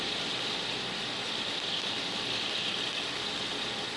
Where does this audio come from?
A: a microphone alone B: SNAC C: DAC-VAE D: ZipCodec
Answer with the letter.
A